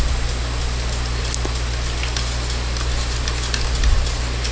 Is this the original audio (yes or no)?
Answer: yes